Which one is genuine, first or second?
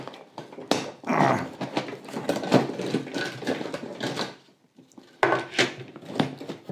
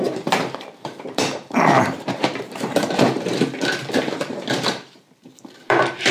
first